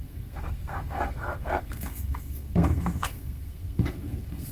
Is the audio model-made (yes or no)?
yes